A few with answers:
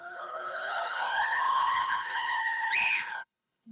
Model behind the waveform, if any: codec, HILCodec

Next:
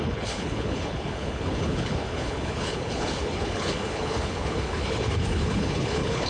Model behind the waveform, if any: codec, HILCodec